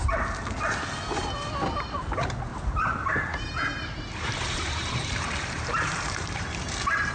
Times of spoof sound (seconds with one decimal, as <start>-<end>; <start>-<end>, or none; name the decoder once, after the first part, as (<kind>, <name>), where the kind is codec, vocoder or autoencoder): 2.5-6.5 (vocoder, BigVGAN v2)